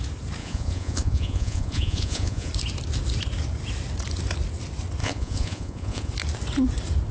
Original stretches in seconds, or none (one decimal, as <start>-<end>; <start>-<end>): 0.0-0.4; 2.5-5.0; 6.1-7.1